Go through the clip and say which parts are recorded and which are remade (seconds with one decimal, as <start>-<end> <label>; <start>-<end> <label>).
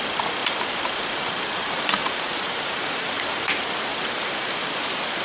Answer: 0.0-0.4 recorded; 0.4-3.5 remade; 3.5-3.9 recorded; 3.9-4.5 remade; 4.5-5.2 recorded